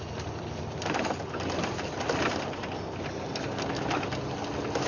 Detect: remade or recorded recorded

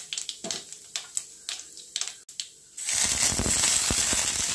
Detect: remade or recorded recorded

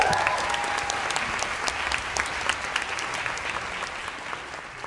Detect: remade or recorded recorded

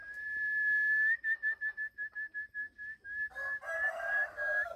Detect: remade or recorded recorded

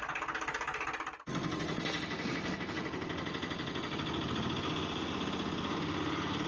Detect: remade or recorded recorded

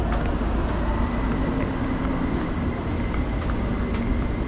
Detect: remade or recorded recorded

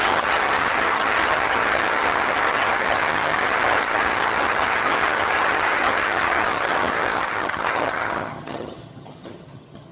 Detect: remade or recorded remade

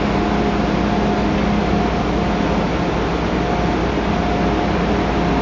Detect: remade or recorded recorded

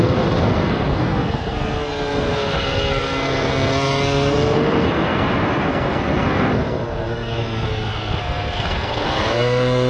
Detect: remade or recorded remade